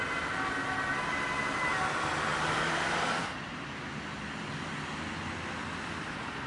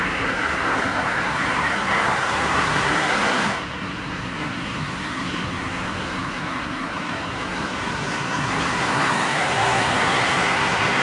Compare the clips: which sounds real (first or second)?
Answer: first